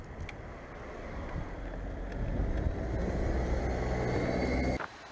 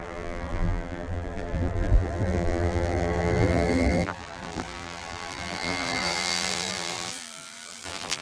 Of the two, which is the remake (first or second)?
second